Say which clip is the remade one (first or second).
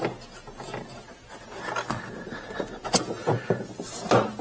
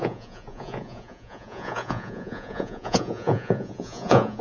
second